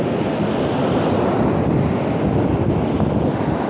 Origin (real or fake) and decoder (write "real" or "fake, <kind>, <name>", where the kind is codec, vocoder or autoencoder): real